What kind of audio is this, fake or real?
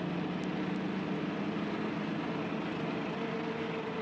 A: real